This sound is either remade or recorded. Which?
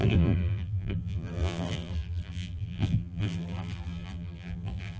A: remade